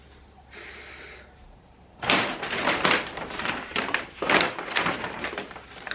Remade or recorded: remade